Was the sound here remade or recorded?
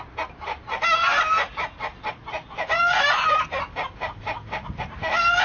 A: recorded